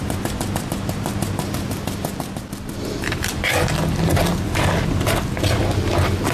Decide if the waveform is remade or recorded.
recorded